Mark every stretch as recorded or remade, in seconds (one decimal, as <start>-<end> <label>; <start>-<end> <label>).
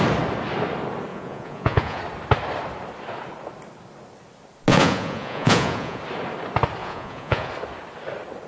0.0-1.1 recorded; 1.1-2.0 remade; 2.0-4.7 recorded; 4.7-6.0 remade; 6.0-6.8 recorded; 6.8-7.5 remade; 7.5-8.5 recorded